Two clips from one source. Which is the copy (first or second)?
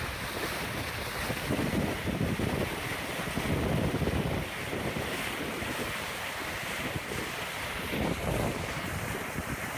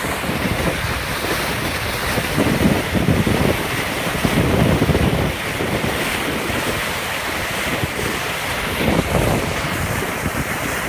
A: second